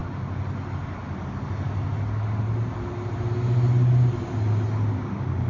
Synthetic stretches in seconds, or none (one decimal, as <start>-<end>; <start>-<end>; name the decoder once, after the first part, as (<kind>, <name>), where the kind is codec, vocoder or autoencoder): none